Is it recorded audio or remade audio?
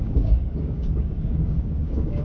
remade